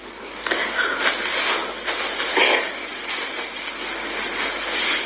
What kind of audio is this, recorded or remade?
recorded